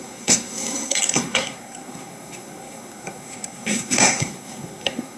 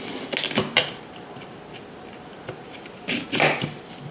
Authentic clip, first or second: second